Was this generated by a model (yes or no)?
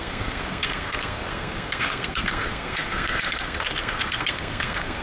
yes